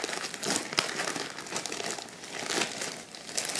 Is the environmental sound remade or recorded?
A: recorded